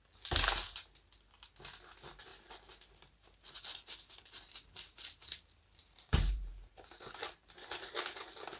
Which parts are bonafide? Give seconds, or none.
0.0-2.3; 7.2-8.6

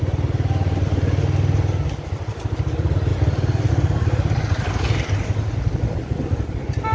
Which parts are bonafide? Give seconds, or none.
0.0-6.9